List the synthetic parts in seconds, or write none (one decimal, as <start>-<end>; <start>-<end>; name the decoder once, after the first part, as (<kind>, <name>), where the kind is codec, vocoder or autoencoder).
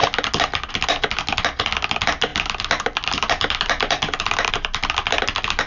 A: none